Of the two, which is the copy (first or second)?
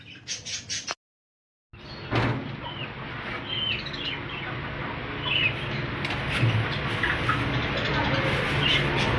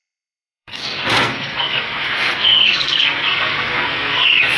second